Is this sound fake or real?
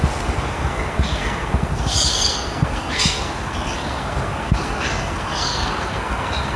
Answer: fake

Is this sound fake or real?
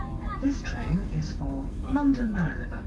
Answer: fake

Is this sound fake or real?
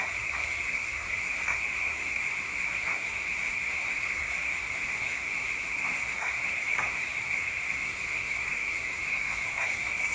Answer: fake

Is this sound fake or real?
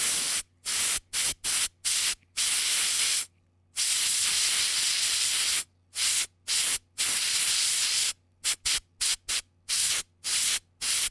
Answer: real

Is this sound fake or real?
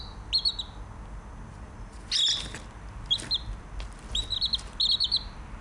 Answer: real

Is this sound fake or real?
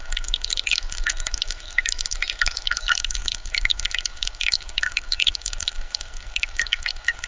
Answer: fake